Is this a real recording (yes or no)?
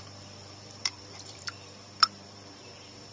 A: no